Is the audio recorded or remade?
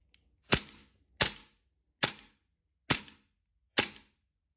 recorded